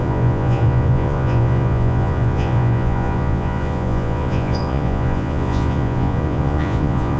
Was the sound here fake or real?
fake